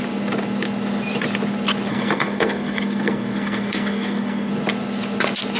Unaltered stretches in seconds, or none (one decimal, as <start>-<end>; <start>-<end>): 0.0-1.9; 4.5-5.6